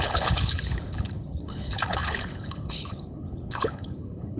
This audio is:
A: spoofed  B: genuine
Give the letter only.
A